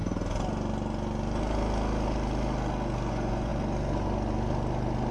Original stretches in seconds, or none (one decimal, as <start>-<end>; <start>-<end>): 0.0-3.1; 3.5-5.1